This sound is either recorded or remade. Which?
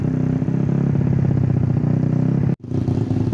recorded